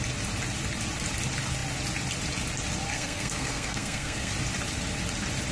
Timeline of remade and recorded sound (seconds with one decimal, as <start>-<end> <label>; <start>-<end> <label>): 0.0-2.9 recorded; 2.9-4.3 remade; 4.3-5.5 recorded